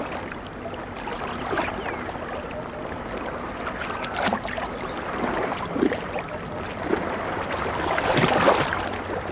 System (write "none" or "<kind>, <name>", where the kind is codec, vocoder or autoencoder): none